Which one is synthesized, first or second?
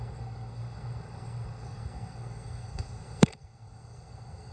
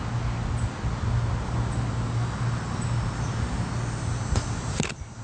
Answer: first